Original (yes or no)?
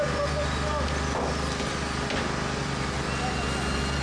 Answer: yes